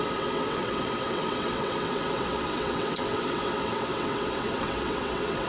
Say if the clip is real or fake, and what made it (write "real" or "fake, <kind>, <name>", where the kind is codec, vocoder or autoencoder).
fake, vocoder, WaveNeXt